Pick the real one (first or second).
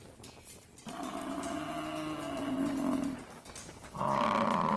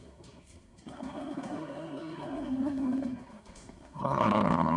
first